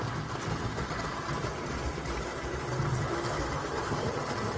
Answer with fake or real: real